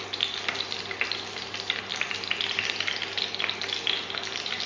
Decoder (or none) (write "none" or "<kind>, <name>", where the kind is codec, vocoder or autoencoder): none